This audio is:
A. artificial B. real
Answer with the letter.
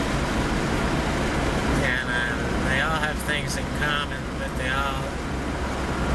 B